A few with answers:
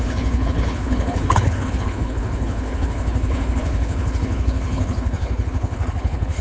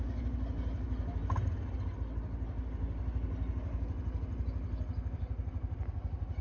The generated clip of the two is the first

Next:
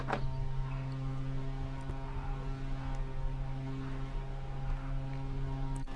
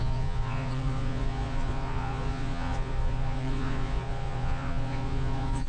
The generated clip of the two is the second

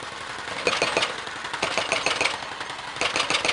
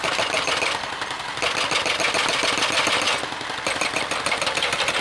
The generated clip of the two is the second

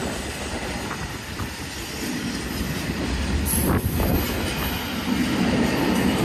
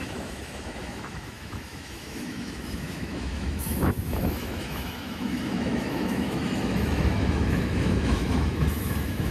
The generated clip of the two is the second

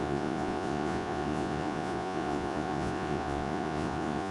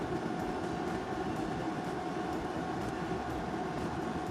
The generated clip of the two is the first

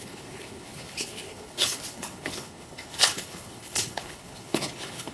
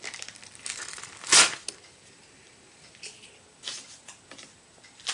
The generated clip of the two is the first